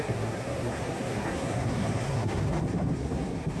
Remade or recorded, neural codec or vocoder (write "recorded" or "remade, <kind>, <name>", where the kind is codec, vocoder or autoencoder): remade, codec, SNAC